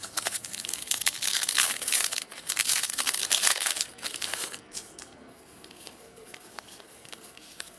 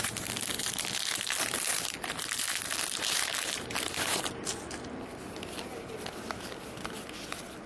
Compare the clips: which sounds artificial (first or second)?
first